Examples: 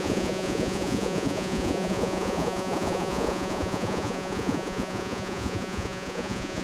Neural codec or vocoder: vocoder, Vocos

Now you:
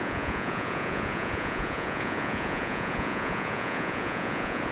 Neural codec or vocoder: vocoder, Vocos